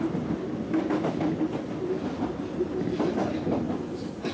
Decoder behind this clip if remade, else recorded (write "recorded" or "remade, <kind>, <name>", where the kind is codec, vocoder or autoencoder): recorded